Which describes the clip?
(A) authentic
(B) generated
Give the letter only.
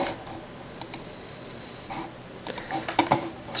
A